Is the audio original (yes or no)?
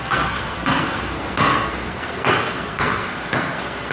no